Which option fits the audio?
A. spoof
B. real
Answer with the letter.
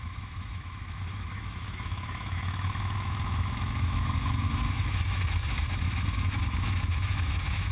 A